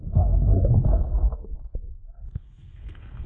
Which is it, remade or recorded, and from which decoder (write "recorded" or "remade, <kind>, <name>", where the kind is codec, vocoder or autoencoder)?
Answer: remade, codec, SNAC